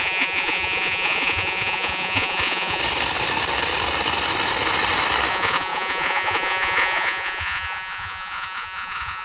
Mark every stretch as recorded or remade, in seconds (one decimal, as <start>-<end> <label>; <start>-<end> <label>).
0.0-2.8 remade; 2.8-5.3 recorded; 5.3-9.2 remade